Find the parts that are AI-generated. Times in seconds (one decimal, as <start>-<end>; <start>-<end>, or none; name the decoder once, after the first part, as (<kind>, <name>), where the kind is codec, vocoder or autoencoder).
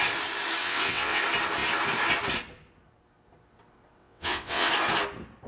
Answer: 0.6-1.2 (vocoder, WaveNeXt); 4.0-4.7